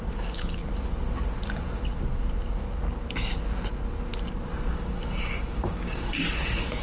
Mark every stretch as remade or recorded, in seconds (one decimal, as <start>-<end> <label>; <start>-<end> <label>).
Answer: 0.0-0.6 remade; 0.6-4.7 recorded; 4.7-6.8 remade